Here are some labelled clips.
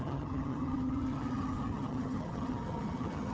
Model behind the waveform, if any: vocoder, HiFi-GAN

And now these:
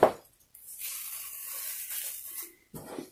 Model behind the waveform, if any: none